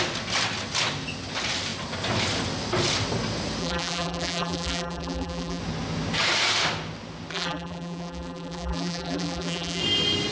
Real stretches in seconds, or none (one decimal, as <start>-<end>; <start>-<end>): 0.0-3.6; 5.6-7.3; 9.8-10.3